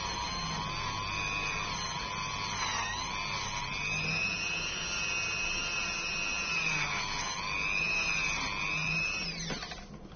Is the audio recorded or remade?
recorded